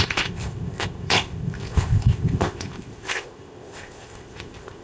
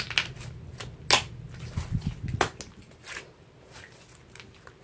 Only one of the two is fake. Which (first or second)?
first